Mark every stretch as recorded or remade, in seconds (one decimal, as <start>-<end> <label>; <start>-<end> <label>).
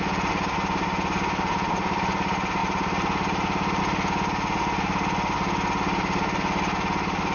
0.0-7.3 recorded